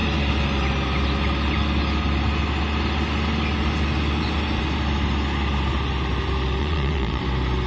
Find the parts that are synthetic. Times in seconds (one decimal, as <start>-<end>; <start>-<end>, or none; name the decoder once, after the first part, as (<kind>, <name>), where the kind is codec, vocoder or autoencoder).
6.6-7.2 (vocoder, Vocos)